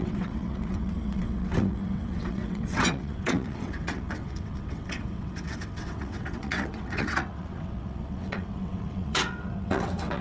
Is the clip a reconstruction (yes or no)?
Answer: yes